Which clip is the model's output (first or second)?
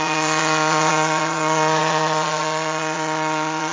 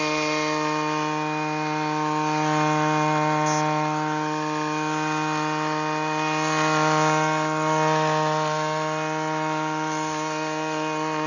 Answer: first